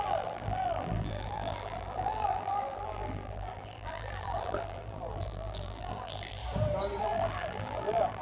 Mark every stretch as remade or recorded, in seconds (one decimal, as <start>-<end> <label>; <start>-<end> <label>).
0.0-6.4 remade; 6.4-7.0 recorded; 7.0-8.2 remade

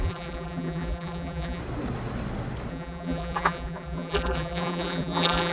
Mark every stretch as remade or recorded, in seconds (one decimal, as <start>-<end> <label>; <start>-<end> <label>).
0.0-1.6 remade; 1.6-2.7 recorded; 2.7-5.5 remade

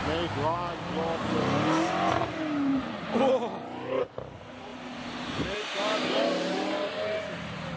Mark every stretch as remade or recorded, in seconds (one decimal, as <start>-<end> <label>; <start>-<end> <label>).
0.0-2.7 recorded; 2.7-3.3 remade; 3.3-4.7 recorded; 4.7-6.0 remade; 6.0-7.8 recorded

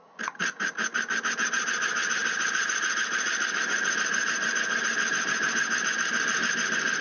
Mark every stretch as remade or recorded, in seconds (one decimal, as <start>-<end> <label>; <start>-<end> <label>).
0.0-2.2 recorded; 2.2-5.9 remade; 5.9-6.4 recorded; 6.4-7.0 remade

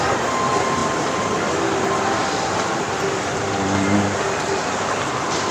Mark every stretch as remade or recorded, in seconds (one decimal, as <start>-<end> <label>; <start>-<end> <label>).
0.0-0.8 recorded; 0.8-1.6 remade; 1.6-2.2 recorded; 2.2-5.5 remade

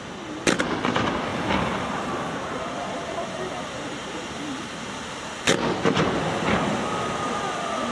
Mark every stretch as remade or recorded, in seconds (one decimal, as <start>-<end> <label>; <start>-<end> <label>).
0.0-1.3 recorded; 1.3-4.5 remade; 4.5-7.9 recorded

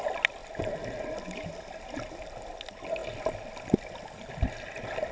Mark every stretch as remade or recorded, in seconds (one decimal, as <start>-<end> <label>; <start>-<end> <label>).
0.0-0.4 recorded; 0.4-2.5 remade; 2.5-5.1 recorded